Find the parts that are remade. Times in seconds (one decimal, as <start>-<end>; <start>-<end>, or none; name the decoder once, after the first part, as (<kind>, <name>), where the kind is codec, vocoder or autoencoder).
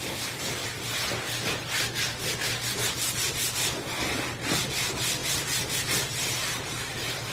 0.0-0.6 (vocoder, BigVGAN v2); 3.8-7.3